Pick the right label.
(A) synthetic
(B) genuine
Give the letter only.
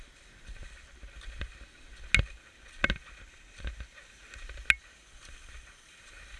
B